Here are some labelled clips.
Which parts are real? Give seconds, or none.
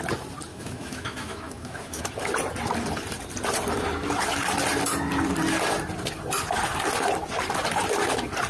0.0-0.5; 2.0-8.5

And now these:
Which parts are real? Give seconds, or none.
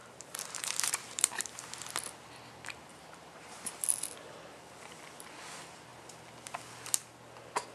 1.4-2.9; 3.7-7.7